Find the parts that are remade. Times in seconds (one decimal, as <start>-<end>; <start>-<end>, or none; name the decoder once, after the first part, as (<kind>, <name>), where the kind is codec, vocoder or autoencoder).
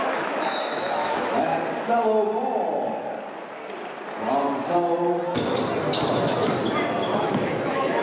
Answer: 0.0-1.5 (autoencoder, DAC-VAE); 6.1-6.6; 7.2-8.0